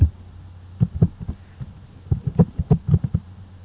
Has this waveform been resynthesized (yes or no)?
no